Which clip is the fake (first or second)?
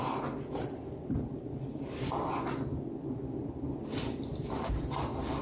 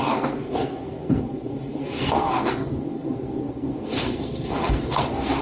second